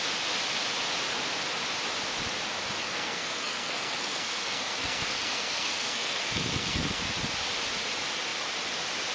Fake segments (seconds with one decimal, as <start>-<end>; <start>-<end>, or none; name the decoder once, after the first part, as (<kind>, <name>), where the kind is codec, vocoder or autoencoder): 2.8-7.0 (codec, SNAC)